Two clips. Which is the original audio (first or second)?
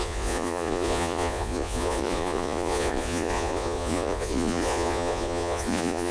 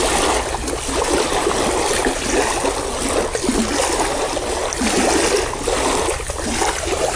second